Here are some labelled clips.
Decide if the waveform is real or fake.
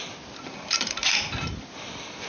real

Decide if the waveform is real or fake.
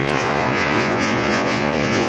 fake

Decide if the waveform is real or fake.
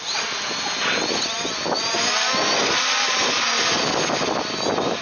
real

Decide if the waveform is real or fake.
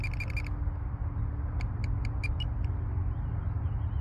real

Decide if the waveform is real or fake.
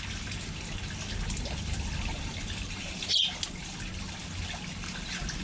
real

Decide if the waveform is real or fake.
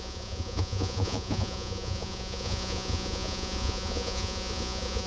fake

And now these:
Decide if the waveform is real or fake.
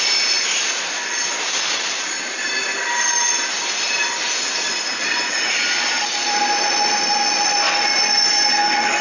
real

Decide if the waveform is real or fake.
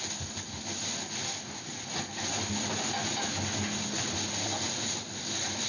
real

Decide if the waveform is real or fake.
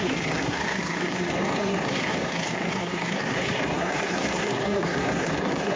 fake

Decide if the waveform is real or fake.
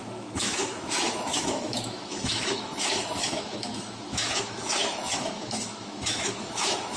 fake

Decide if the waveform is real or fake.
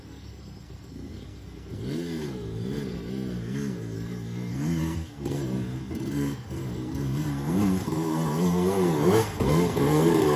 fake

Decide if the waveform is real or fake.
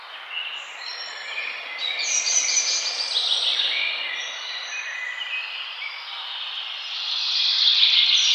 real